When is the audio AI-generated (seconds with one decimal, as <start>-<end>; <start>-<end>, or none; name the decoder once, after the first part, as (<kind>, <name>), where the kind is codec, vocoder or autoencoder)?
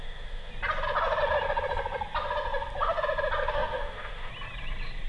0.0-0.5 (autoencoder, DAC-VAE); 3.5-4.3